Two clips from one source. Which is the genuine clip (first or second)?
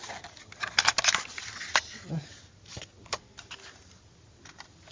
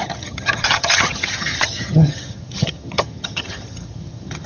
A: first